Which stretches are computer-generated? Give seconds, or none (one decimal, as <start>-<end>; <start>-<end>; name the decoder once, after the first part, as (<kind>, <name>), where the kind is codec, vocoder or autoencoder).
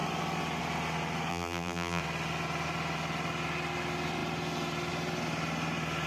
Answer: 1.3-2.0 (vocoder, BigVGAN v2)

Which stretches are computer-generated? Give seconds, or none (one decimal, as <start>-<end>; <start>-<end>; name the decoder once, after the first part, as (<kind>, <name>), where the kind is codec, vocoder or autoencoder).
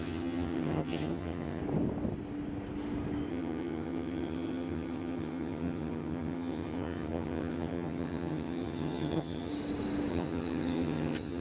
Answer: 0.0-1.6 (vocoder, HiFi-GAN); 3.3-9.5; 10.1-11.4